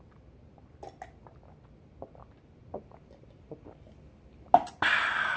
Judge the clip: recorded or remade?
recorded